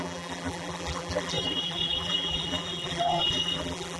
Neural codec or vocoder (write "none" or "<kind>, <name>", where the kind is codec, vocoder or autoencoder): vocoder, BigVGAN v2